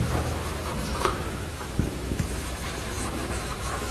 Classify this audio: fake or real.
fake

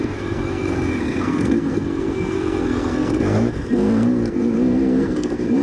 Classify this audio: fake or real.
fake